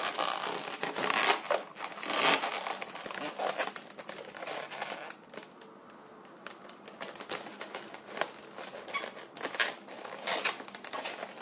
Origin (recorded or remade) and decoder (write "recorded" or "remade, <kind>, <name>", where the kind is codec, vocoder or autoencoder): recorded